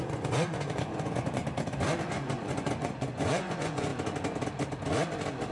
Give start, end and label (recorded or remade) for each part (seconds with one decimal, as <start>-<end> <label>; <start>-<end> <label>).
0.0-1.4 remade; 1.4-2.0 recorded; 2.0-3.9 remade; 3.9-5.5 recorded